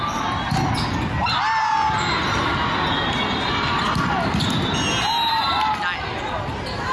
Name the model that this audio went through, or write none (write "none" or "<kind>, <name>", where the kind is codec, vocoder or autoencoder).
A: none